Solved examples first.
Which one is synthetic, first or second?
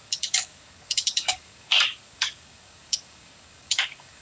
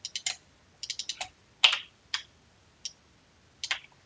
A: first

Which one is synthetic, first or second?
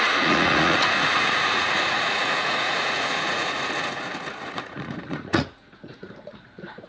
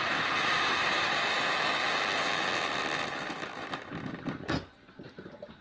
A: first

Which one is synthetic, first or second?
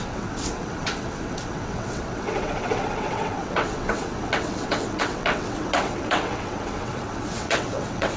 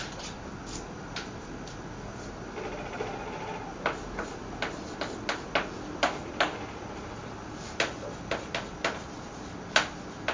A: first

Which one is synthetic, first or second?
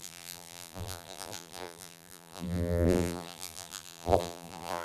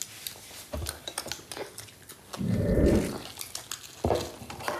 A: first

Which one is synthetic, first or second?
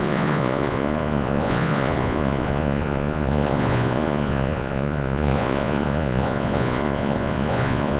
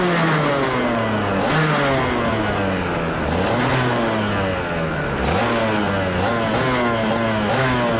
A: first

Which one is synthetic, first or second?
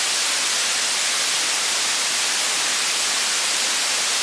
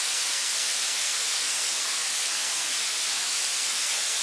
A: second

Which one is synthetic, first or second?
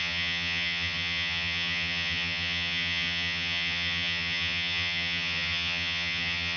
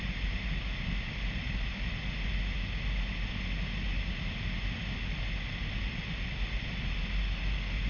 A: first